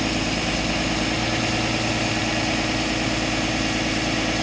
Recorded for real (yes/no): yes